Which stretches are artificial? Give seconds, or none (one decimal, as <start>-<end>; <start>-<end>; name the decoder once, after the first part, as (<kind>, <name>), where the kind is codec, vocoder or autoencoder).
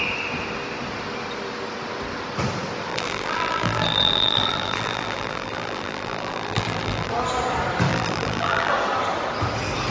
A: 2.9-7.1 (vocoder, BigVGAN v2); 7.9-8.7